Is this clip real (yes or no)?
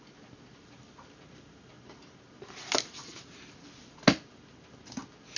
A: yes